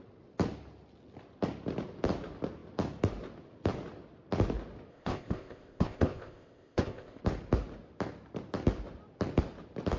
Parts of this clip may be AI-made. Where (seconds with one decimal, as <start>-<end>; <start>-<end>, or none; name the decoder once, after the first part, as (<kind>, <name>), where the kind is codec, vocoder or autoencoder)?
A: 4.9-7.2 (codec, ZipCodec)